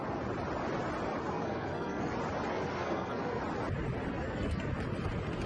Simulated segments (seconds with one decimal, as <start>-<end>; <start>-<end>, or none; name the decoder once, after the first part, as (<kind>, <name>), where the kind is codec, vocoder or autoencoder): 1.2-2.1 (codec, SNAC); 2.5-3.4; 4.1-4.7